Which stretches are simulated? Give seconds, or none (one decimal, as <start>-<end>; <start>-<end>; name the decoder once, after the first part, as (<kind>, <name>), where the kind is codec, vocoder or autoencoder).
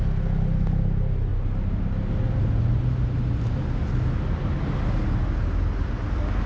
none